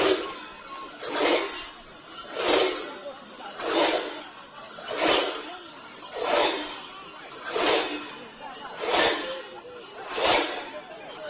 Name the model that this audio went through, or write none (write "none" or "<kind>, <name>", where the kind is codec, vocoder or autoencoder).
none